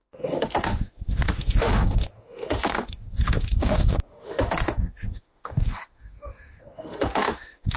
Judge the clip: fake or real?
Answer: fake